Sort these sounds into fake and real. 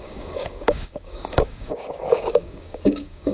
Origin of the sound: fake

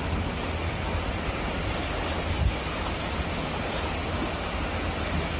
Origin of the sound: real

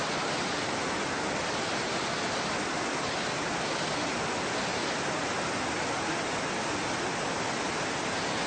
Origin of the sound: real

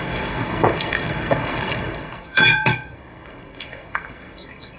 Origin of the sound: fake